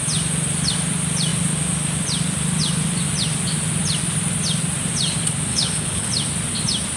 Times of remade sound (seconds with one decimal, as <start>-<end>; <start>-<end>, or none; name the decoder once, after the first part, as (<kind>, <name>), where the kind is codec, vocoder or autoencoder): 5.5-6.1 (codec, HILCodec)